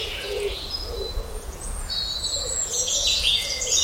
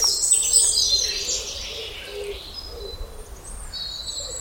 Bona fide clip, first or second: second